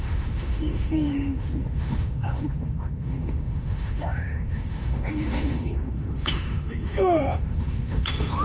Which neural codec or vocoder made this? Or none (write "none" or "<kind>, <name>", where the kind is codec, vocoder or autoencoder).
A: autoencoder, DAC-VAE